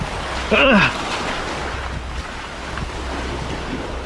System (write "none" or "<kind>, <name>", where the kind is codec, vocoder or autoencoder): none